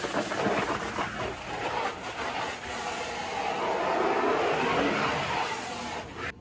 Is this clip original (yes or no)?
yes